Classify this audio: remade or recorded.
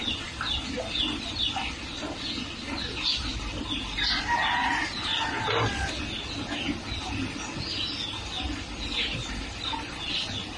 recorded